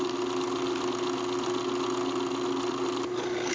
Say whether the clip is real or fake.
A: real